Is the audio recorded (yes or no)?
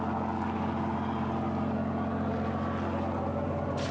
yes